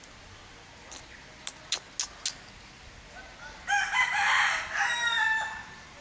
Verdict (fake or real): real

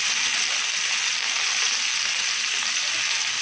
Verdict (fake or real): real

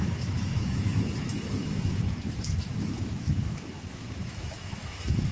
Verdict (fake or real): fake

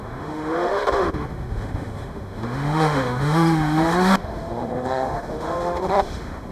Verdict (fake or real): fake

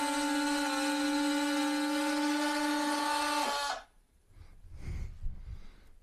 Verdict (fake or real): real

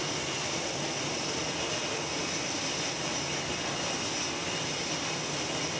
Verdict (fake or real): real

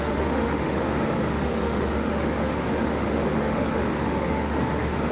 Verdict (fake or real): fake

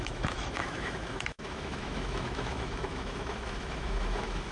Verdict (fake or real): fake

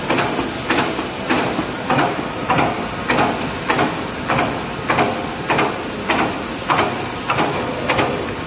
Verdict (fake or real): real